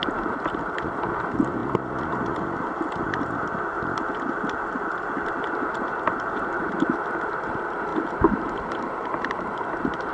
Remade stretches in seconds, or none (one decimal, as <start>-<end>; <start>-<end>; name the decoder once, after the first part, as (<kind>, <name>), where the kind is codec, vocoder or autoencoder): 7.9-9.7 (vocoder, BigVGAN v2)